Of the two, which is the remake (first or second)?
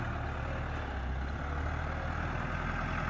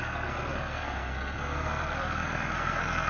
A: second